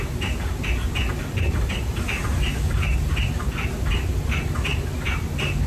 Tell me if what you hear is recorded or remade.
recorded